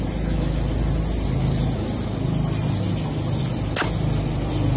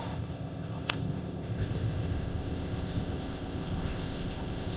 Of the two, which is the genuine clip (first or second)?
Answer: first